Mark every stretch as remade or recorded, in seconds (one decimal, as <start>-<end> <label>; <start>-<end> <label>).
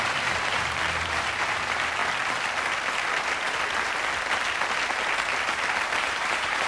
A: 0.0-2.0 remade; 2.0-6.0 recorded; 6.0-6.7 remade